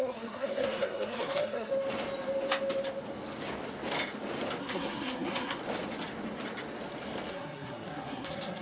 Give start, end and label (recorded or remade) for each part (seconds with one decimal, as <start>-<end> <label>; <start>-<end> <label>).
0.0-1.7 remade; 1.7-4.6 recorded; 4.6-5.6 remade; 5.6-7.3 recorded; 7.3-8.6 remade